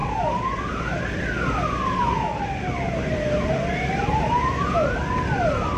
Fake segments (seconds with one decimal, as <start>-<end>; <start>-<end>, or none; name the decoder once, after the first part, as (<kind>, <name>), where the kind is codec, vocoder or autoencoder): none